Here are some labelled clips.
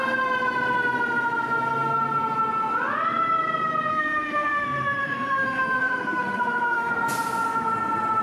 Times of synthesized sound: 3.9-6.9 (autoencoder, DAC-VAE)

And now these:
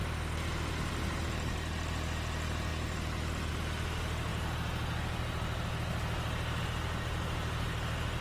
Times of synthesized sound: none

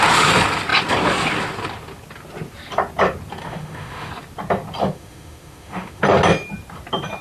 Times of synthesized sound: 3.4-4.1 (autoencoder, DAC-VAE); 4.8-6.0